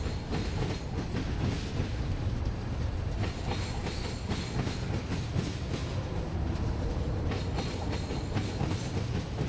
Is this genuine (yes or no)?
yes